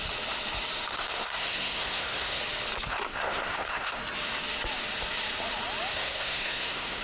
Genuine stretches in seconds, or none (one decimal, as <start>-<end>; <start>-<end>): 0.0-0.9; 2.4-2.9; 4.0-5.9